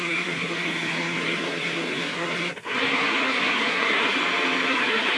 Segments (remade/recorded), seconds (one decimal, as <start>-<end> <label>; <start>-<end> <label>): 0.0-4.2 remade; 4.2-4.7 recorded; 4.7-5.2 remade